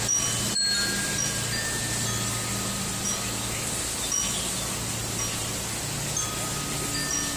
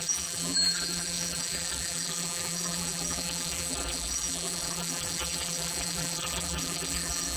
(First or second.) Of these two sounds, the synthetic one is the second